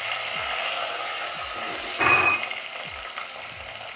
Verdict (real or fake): real